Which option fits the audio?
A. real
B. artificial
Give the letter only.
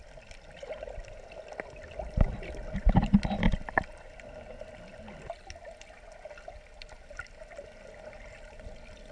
A